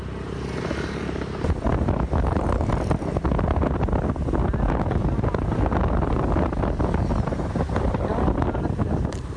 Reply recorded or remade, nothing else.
recorded